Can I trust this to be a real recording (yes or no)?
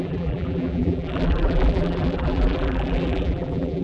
no